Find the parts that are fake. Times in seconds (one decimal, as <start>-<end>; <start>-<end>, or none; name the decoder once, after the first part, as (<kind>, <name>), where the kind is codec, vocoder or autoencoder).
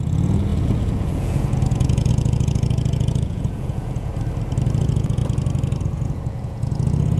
0.0-4.1 (vocoder, Vocos); 4.8-5.2; 5.8-7.2